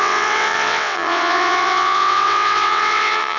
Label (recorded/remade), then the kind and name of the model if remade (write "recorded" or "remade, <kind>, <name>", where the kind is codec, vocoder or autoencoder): remade, vocoder, WaveNeXt